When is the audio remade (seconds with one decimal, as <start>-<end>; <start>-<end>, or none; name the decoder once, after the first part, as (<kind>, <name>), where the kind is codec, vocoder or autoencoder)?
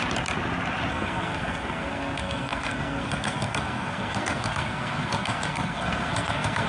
0.9-6.7 (codec, SNAC)